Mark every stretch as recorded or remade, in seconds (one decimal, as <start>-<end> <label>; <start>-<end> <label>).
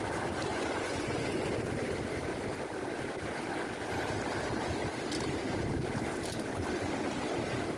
0.0-0.5 recorded; 0.5-1.5 remade; 1.5-7.8 recorded